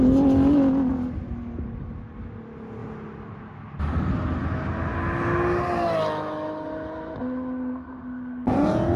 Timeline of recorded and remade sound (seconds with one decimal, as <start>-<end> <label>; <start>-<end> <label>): 0.0-9.0 recorded